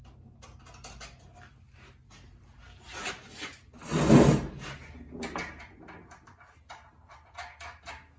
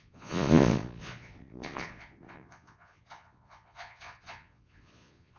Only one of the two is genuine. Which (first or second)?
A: first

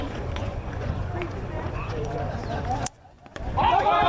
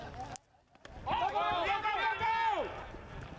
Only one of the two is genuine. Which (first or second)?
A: second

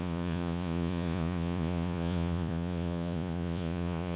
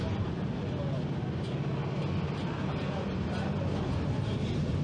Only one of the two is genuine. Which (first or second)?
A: second